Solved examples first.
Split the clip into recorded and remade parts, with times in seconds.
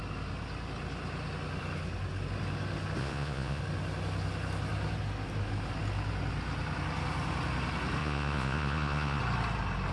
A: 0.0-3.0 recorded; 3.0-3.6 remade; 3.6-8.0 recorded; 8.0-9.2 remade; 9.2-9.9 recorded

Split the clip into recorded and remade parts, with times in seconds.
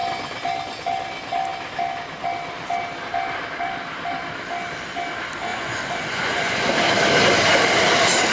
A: 0.0-5.5 recorded; 5.5-6.7 remade; 6.7-8.3 recorded